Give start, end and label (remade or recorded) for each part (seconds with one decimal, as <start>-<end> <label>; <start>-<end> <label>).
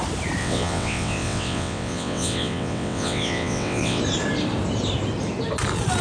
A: 0.0-0.4 recorded; 0.4-4.0 remade; 4.0-6.0 recorded